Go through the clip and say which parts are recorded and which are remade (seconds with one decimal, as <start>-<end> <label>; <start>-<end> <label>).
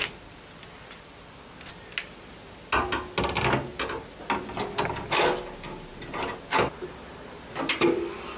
0.0-8.4 recorded